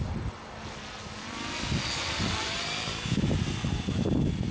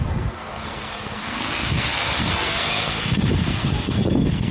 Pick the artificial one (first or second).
second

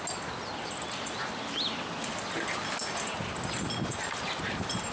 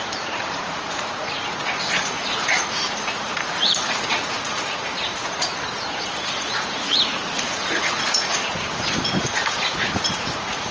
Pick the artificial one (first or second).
second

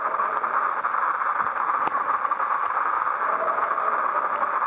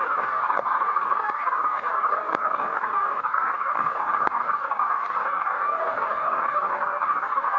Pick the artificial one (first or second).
second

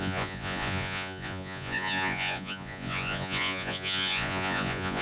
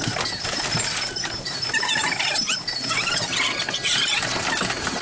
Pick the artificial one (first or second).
first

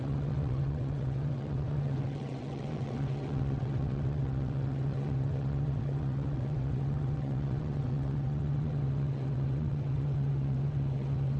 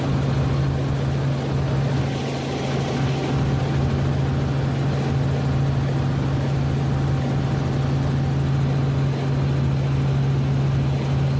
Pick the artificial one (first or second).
first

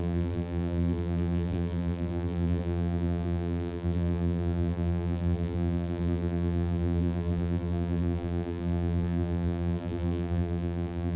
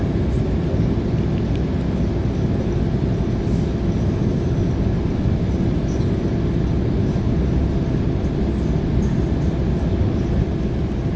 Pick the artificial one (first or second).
first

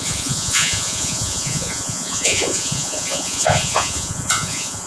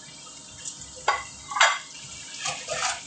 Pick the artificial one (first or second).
first